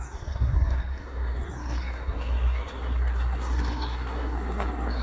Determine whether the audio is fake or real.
fake